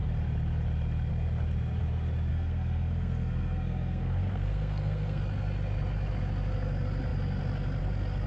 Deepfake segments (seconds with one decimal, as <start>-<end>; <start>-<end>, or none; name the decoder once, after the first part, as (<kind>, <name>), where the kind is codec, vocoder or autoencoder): 2.3-5.2 (codec, SNAC)